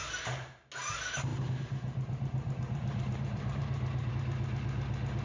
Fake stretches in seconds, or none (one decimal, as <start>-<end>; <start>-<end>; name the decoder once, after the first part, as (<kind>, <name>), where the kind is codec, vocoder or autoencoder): 0.0-0.7 (vocoder, BigVGAN v2); 1.3-4.1